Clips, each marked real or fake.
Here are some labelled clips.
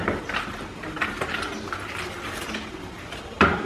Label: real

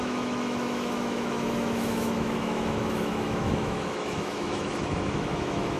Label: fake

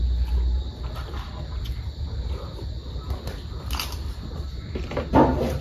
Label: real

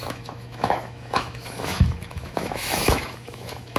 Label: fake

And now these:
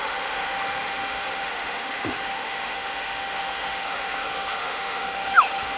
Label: fake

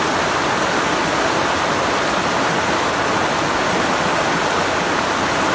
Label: real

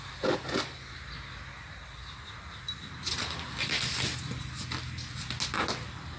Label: real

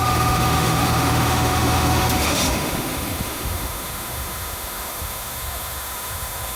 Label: fake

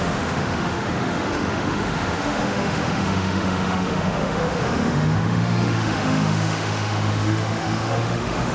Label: fake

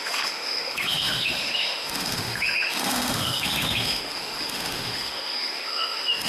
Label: fake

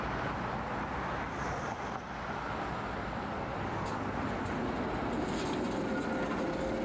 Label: real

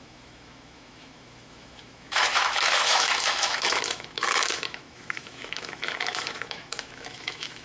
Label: fake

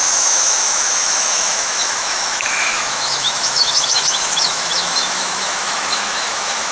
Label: fake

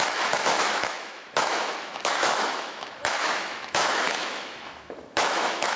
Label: fake